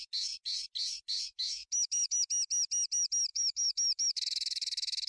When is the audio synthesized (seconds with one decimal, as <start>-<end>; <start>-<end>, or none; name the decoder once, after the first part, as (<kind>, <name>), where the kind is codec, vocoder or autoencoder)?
1.3-2.3 (autoencoder, DAC-VAE); 3.3-5.1